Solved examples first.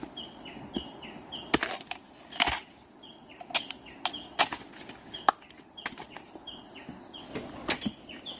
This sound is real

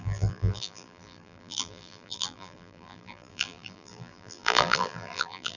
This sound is fake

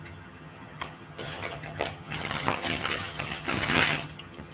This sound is fake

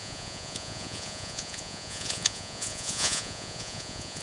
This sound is fake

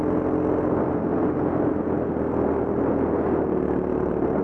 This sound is real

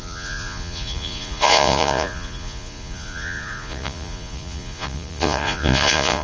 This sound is fake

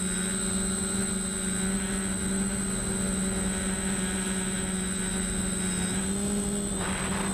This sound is real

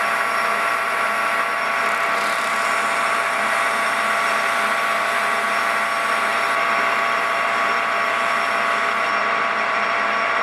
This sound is real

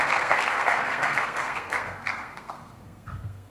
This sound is fake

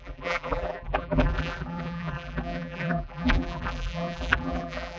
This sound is fake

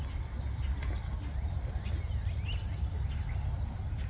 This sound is real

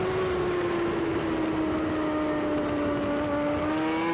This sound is real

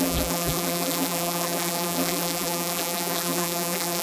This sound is fake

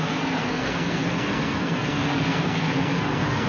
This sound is fake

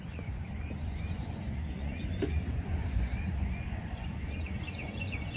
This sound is fake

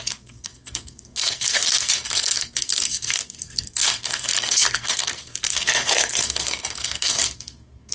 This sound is fake